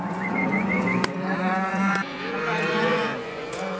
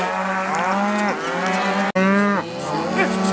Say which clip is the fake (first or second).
first